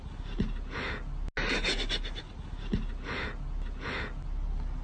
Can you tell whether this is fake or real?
real